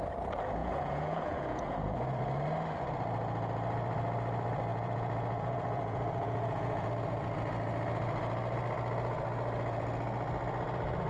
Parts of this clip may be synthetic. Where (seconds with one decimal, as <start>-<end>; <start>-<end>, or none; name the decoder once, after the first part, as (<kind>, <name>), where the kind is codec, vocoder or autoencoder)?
0.6-2.2 (vocoder, Vocos); 4.7-6.9